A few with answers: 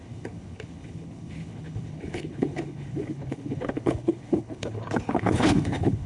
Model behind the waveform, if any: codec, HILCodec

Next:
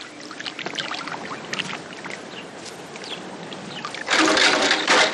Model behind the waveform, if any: none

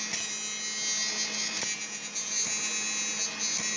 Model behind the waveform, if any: none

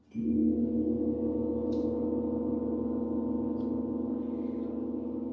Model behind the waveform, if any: none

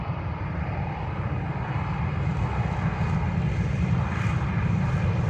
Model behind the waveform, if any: none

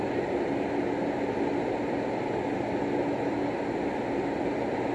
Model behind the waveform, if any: none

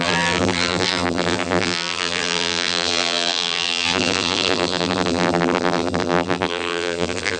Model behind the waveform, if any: vocoder, BigVGAN v2